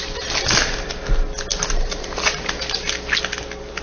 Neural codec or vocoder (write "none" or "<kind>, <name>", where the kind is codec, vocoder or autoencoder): none